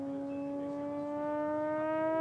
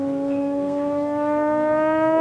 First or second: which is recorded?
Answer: first